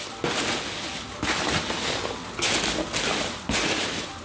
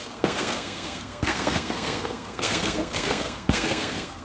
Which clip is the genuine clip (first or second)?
first